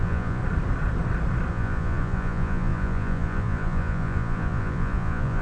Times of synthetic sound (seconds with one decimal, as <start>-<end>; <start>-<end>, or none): 0.0-0.4; 1.5-5.4